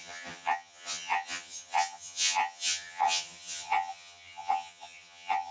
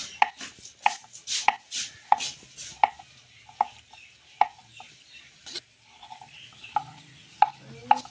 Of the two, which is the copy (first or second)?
first